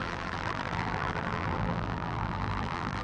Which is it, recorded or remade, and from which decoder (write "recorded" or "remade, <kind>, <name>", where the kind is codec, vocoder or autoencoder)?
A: remade, vocoder, BigVGAN v2